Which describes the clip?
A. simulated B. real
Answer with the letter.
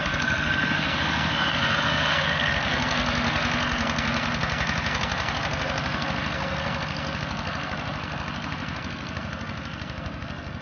A